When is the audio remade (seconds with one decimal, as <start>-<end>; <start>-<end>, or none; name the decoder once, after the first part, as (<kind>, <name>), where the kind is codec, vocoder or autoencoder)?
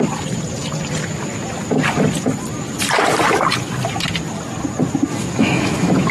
5.1-6.1 (autoencoder, DAC-VAE)